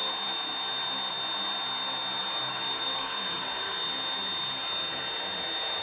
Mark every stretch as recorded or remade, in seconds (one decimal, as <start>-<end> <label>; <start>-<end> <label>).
0.0-2.2 recorded; 2.2-3.9 remade; 3.9-5.8 recorded